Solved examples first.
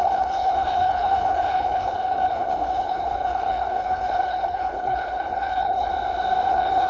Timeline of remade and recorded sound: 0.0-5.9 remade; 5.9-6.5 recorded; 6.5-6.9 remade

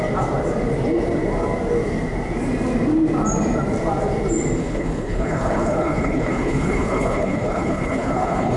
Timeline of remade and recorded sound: 0.0-4.6 recorded; 4.6-8.6 remade

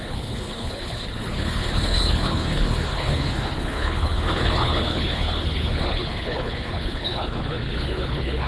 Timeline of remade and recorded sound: 0.0-8.5 remade

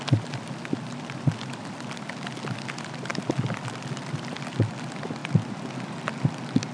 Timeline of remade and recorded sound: 0.0-6.7 recorded

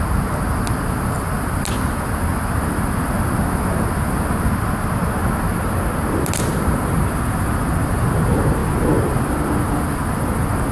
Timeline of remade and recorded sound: 0.0-10.7 recorded